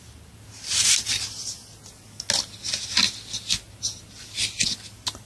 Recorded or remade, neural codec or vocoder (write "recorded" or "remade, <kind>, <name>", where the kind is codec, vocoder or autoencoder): recorded